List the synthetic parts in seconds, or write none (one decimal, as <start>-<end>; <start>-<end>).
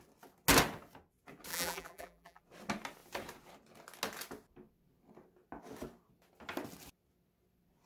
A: 1.5-2.4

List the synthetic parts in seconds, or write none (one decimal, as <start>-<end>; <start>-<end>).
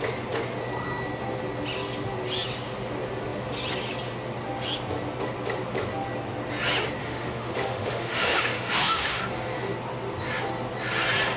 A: 7.0-9.2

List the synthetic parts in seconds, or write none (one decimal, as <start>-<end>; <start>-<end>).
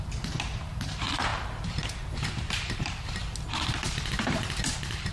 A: 0.0-3.2; 3.8-5.1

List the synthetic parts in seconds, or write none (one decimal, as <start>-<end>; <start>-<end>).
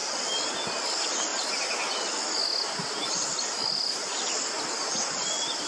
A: none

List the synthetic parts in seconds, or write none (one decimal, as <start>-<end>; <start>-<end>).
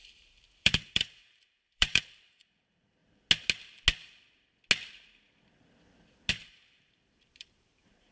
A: 0.0-3.0; 6.3-8.1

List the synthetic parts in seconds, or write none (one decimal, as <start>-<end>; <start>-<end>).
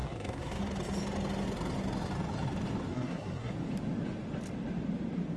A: 0.0-0.6; 2.9-3.5